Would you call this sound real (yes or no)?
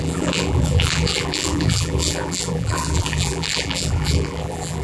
no